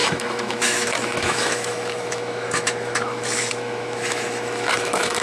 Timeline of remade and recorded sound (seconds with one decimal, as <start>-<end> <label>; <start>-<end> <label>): 0.0-5.2 remade